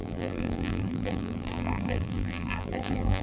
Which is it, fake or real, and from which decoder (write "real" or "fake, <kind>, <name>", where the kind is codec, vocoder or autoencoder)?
fake, vocoder, BigVGAN v2